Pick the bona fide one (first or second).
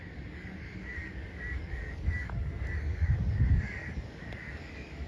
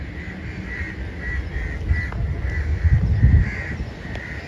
second